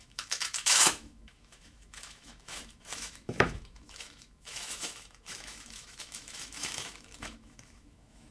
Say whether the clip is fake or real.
fake